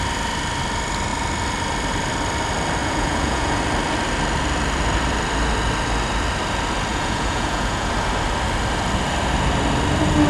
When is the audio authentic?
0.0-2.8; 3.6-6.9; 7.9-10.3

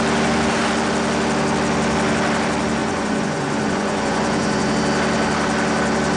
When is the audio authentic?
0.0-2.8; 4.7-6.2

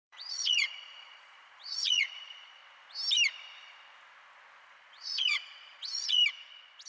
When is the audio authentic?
2.6-4.6; 6.2-6.9

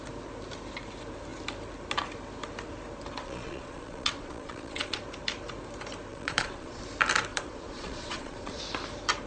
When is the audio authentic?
0.0-3.2; 5.0-6.1; 6.8-7.3; 8.6-9.3